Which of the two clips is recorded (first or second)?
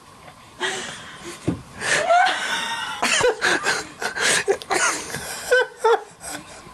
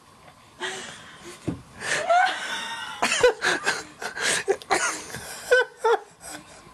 second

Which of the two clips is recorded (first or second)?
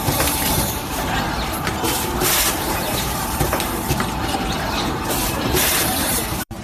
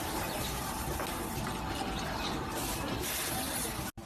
second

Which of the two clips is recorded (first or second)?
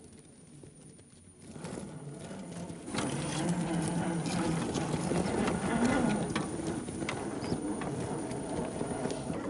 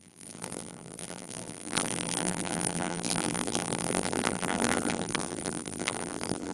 first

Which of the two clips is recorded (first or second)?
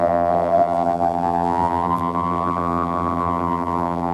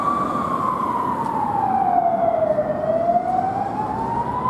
second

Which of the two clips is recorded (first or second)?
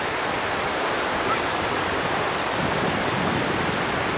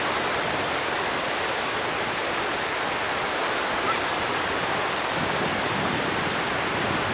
second